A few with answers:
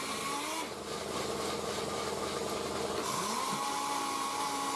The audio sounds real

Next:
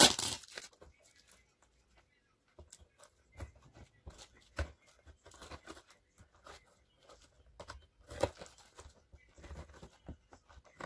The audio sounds real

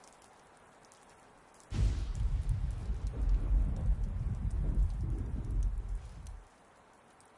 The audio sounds real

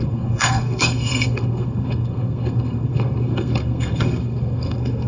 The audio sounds fake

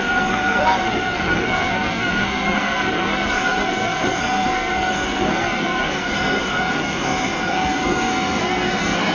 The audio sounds fake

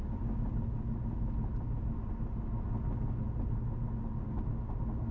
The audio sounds real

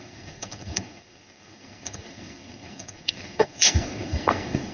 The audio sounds fake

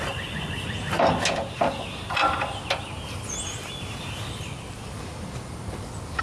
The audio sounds real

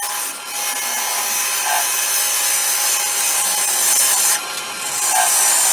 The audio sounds real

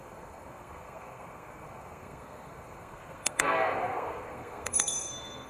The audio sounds fake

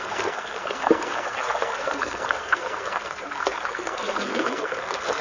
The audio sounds fake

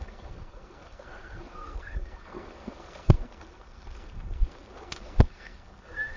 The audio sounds fake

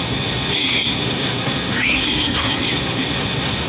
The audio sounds fake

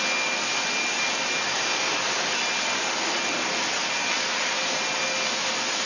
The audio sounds real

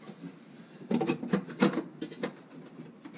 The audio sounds real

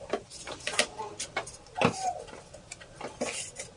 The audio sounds real